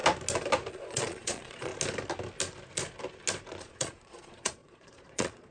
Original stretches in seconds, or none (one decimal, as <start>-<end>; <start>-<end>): 0.0-0.7; 1.7-3.6